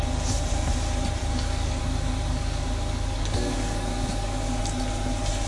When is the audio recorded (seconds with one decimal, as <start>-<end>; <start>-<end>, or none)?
0.0-1.2; 1.8-2.3; 4.6-5.5